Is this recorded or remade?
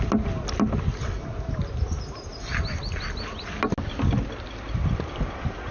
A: recorded